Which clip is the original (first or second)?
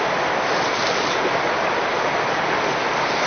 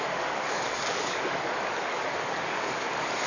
first